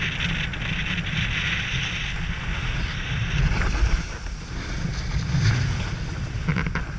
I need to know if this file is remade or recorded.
recorded